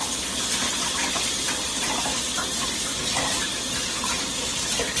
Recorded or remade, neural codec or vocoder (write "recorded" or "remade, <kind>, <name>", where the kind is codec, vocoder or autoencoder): recorded